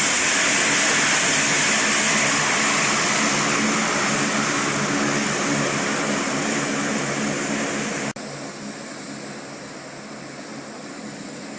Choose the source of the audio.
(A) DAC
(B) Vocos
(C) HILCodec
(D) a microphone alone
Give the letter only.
D